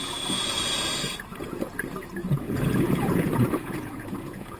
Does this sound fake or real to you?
fake